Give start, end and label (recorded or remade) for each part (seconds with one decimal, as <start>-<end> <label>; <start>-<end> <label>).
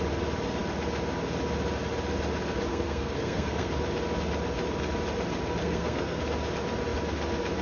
0.0-2.7 recorded; 2.7-3.7 remade; 3.7-5.6 recorded; 5.6-6.2 remade; 6.2-7.6 recorded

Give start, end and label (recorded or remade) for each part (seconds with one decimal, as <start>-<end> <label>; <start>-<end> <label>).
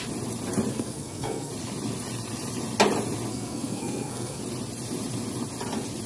0.0-0.7 recorded; 0.7-1.5 remade; 1.5-3.3 recorded; 3.3-4.4 remade; 4.4-6.1 recorded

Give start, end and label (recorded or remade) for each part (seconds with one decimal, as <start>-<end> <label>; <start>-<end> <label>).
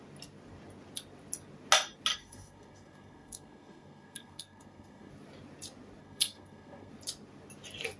0.0-2.1 recorded; 2.1-5.1 remade; 5.1-6.0 recorded; 6.0-6.9 remade; 6.9-8.0 recorded